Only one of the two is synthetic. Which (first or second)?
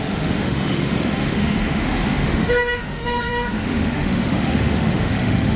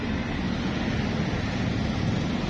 first